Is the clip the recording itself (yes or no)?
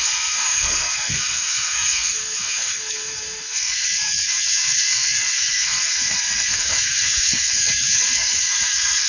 no